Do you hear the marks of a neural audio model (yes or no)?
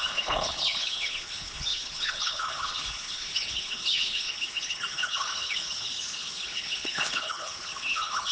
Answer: yes